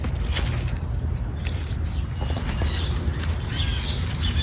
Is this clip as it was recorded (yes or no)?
yes